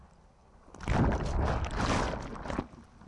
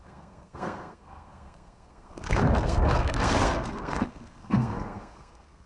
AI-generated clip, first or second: second